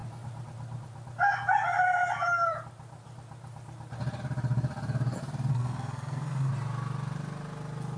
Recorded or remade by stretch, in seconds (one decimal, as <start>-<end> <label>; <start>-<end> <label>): 0.0-5.5 recorded; 5.5-6.5 remade; 6.5-8.0 recorded